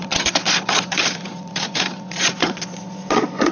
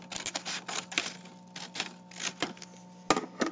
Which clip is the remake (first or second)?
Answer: first